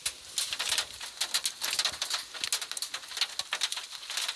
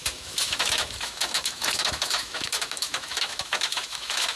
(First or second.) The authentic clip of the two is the first